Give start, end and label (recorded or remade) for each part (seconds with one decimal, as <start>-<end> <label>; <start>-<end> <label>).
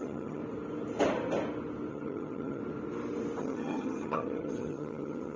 0.0-0.4 remade; 0.4-1.9 recorded; 1.9-2.6 remade; 2.6-3.4 recorded; 3.4-5.4 remade